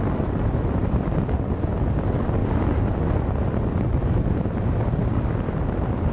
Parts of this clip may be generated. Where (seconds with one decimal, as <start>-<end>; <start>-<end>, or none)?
0.8-1.5